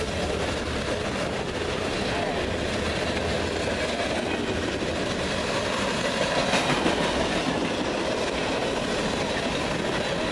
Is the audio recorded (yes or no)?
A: yes